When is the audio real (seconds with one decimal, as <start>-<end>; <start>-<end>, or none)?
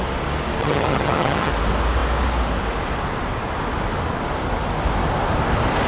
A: 0.0-0.6; 1.5-5.9